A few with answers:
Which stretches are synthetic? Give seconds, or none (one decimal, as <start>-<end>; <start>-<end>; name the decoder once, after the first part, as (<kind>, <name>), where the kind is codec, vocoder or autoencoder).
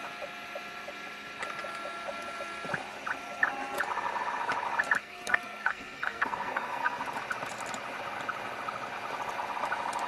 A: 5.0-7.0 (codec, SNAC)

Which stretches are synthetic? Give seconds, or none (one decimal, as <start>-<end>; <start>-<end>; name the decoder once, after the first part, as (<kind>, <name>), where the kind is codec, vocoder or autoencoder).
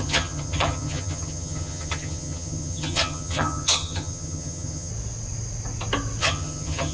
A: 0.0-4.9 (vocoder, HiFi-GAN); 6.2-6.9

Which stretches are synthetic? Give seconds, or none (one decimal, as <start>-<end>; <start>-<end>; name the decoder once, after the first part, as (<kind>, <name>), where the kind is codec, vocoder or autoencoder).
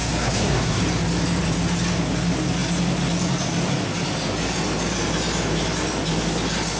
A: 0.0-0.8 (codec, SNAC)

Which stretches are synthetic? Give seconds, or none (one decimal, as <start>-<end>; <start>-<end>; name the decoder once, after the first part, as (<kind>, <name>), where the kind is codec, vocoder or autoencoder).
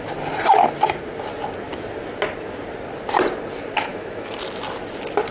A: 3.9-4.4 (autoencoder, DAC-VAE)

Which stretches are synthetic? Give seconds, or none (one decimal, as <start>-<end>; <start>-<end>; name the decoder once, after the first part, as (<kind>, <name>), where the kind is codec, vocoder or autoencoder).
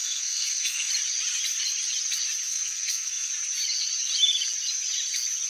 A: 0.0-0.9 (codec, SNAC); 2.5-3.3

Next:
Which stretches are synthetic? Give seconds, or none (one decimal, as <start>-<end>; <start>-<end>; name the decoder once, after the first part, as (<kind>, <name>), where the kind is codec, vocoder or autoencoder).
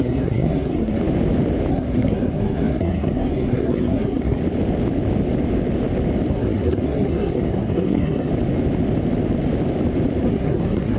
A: 0.0-1.0 (codec, SNAC); 1.7-4.4; 6.3-8.3; 10.2-11.0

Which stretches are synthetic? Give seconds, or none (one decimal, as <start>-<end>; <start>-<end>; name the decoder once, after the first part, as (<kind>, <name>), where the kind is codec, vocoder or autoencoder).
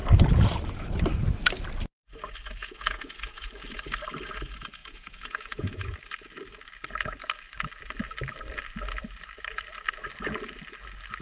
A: 2.6-3.5 (vocoder, Vocos); 4.8-5.9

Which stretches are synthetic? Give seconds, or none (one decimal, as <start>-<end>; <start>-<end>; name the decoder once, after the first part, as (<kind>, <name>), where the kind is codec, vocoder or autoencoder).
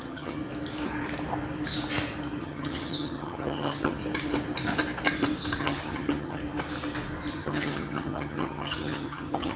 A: 0.0-0.4 (vocoder, HiFi-GAN); 2.4-4.0; 5.6-6.4; 7.3-9.6